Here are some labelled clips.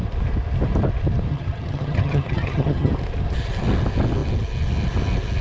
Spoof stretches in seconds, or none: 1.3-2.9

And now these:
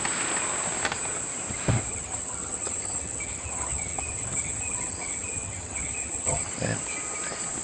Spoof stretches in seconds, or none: 1.9-6.5

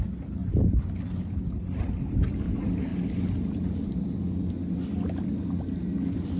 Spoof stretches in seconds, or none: none

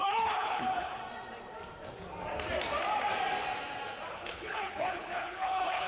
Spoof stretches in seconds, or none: 0.0-1.0; 4.1-5.9

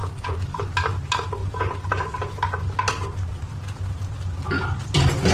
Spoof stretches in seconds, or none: 0.0-0.6

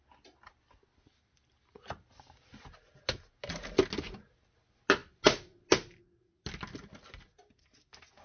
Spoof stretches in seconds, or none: none

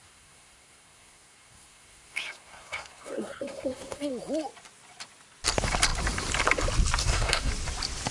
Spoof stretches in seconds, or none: 0.0-4.1; 7.0-7.5